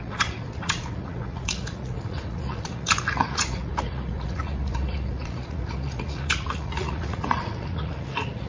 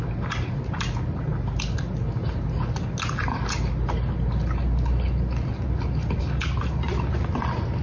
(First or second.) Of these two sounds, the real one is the second